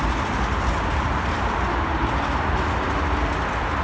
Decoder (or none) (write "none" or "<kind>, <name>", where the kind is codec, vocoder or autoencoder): none